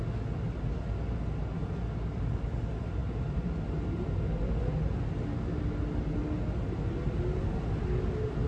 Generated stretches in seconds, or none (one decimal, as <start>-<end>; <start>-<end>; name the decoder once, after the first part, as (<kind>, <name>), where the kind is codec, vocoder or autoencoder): 1.6-2.6 (vocoder, BigVGAN v2)